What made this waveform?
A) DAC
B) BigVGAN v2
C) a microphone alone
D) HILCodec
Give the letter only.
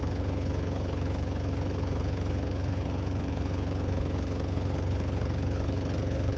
D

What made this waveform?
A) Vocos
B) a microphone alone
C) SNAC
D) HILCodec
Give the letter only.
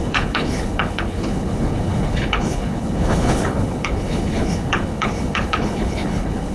D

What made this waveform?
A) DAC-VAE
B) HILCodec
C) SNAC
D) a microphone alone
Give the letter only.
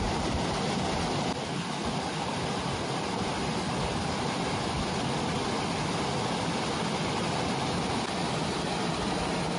D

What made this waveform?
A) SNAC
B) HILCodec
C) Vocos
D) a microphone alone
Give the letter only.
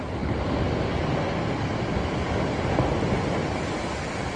D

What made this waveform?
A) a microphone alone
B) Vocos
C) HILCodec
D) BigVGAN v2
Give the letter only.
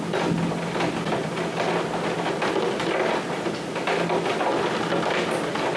A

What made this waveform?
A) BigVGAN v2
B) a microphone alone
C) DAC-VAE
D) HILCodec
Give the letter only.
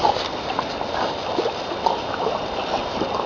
B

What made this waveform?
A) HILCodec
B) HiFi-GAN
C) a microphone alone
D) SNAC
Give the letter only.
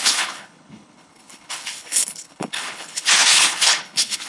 A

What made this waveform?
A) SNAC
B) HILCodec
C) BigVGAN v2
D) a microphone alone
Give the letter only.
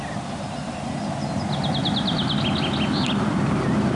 D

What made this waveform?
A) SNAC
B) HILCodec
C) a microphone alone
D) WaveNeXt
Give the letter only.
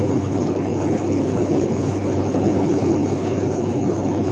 B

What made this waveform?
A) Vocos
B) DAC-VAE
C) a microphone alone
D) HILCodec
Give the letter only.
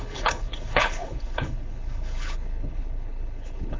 D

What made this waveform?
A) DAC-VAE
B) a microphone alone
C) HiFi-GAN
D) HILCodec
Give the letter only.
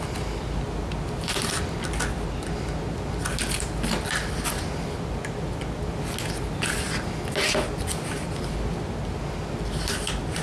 B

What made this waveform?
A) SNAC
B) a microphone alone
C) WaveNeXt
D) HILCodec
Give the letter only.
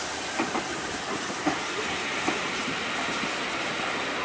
B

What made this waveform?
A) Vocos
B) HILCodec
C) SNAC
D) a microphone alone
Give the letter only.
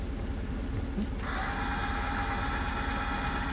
D